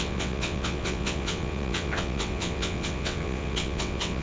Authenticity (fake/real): fake